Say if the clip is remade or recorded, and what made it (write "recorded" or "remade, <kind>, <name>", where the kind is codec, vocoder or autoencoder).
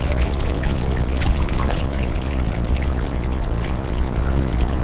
remade, vocoder, Vocos